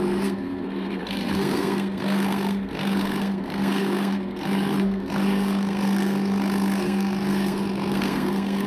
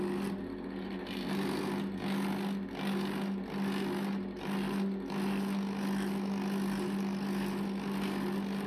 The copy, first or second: first